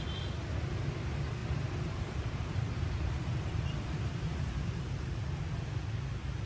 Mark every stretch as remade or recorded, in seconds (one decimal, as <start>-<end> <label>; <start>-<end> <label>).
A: 0.0-1.4 recorded; 1.4-5.1 remade; 5.1-6.5 recorded